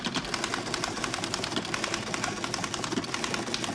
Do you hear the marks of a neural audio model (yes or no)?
no